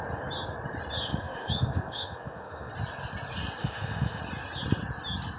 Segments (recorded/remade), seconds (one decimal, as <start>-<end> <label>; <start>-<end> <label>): 0.0-1.1 recorded; 1.1-2.7 remade; 2.7-3.6 recorded; 3.6-4.2 remade; 4.2-5.4 recorded